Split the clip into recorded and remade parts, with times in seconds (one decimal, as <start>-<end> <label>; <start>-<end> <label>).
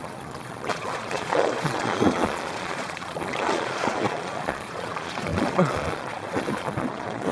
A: 0.0-7.3 remade